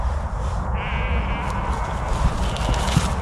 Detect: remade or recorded recorded